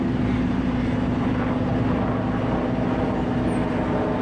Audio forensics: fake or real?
real